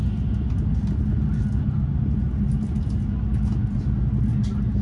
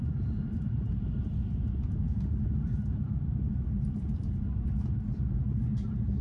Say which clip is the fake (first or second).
second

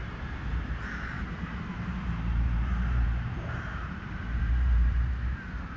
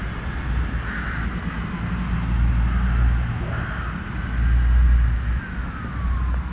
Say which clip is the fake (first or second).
first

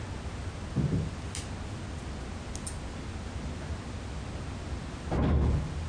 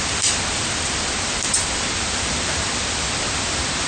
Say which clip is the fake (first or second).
second